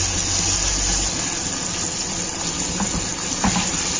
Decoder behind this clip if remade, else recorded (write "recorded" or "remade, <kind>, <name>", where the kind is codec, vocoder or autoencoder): recorded